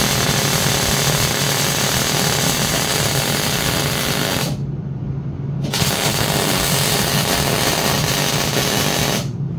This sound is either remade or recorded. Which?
recorded